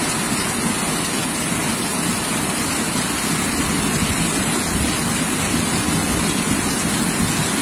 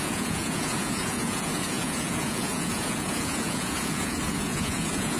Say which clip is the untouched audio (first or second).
first